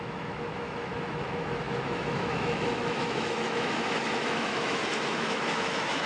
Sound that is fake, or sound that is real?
fake